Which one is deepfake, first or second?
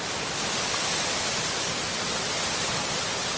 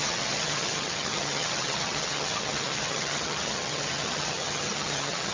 second